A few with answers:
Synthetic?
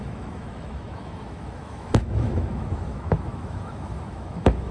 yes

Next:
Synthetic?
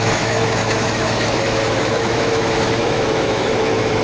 yes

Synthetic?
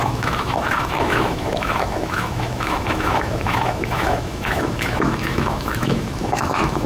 yes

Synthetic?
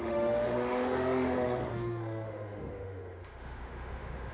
yes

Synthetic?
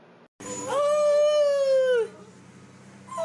no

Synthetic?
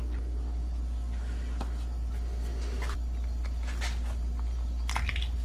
no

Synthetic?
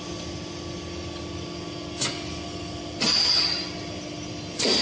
no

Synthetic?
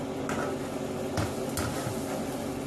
no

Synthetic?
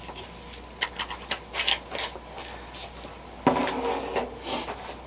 no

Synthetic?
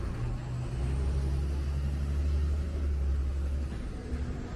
no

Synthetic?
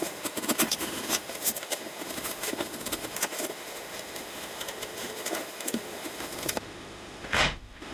yes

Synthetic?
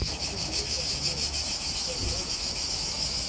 yes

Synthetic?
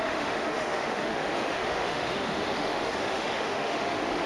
yes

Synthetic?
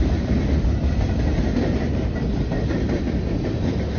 no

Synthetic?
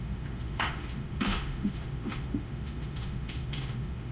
yes